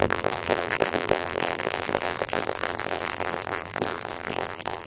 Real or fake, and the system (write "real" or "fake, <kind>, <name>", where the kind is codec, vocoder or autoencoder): fake, vocoder, BigVGAN v2